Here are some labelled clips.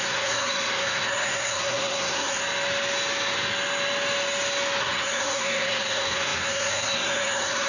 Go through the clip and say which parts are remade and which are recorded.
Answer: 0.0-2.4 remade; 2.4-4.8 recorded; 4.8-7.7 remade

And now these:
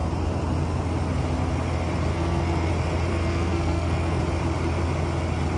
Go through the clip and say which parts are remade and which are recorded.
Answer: 0.0-2.1 recorded; 2.1-2.7 remade; 2.7-3.1 recorded; 3.1-4.2 remade; 4.2-5.6 recorded

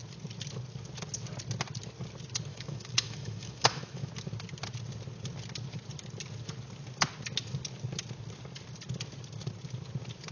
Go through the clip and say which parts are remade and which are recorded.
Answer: 0.0-2.5 recorded; 2.5-4.1 remade; 4.1-10.3 recorded

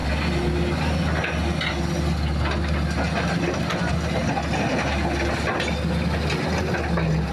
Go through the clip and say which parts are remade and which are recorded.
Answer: 0.0-7.3 recorded

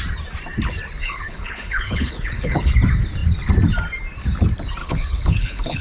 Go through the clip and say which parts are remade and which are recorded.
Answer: 0.0-1.0 recorded; 1.0-2.7 remade; 2.7-4.8 recorded; 4.8-5.8 remade

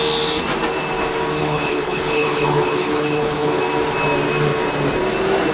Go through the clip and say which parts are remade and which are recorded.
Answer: 0.0-1.4 recorded; 1.4-3.6 remade; 3.6-5.5 recorded

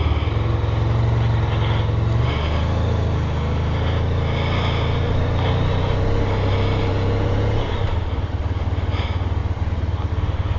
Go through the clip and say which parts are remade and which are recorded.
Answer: 0.0-6.9 recorded; 6.9-7.7 remade; 7.7-10.6 recorded